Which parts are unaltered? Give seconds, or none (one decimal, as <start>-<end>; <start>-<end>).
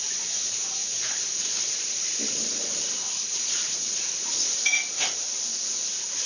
none